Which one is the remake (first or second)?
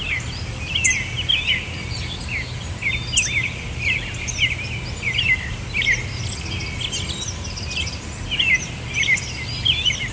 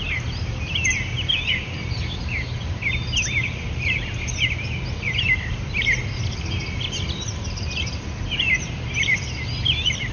second